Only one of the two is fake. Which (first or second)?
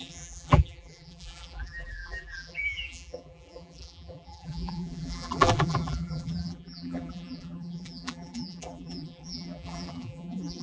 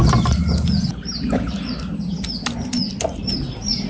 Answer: first